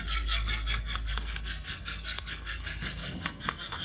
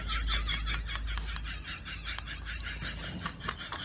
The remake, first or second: first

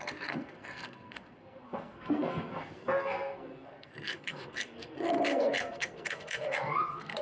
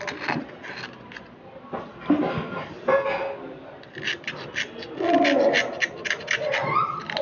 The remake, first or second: first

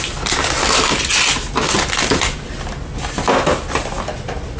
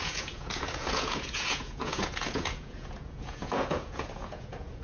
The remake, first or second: second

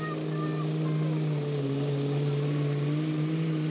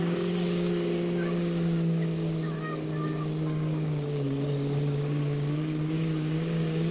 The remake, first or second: second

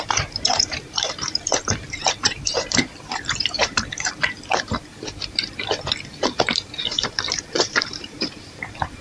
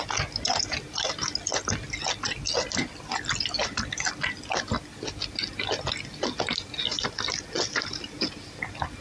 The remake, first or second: first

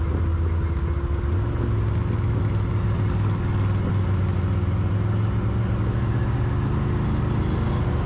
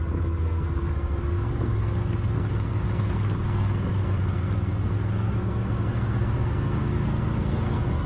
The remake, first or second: second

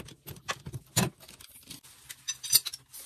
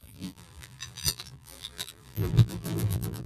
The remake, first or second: second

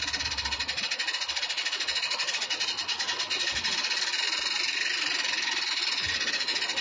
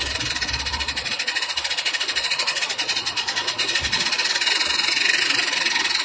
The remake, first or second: second